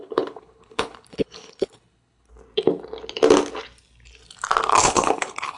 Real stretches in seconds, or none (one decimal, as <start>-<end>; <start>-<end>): 2.3-4.8